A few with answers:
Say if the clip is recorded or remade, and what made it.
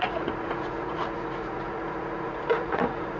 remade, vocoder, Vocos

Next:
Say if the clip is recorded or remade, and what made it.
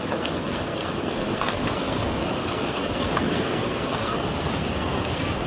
remade, codec, SNAC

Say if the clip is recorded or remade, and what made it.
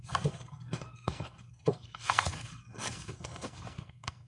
remade, codec, SNAC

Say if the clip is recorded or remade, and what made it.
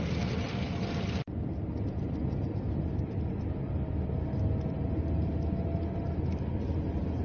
recorded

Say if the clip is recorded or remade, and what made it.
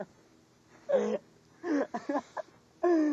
recorded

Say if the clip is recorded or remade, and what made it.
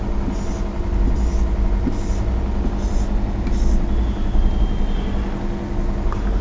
recorded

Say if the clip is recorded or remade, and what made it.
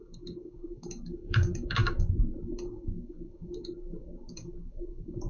remade, codec, DAC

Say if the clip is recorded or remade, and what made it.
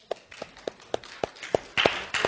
recorded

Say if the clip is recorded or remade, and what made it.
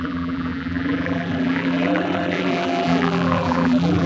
remade, vocoder, BigVGAN v2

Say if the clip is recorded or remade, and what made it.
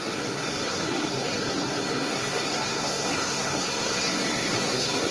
remade, codec, SNAC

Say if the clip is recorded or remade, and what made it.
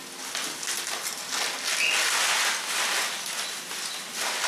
recorded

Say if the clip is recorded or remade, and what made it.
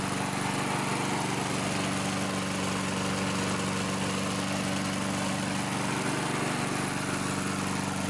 recorded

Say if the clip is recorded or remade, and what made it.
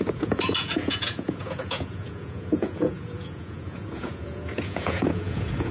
remade, vocoder, Vocos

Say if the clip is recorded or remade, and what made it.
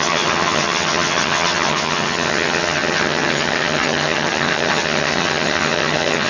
remade, vocoder, HiFi-GAN